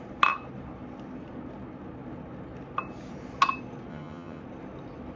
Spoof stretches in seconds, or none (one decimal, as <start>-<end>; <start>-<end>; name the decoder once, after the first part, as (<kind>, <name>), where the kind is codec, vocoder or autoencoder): 3.9-4.4 (vocoder, HiFi-GAN)